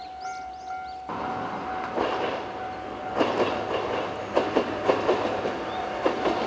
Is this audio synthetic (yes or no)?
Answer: no